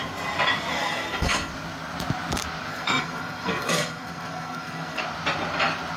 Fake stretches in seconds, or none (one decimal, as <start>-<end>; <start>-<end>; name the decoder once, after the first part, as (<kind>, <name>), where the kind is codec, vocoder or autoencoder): 0.7-1.5 (codec, SNAC); 2.7-5.0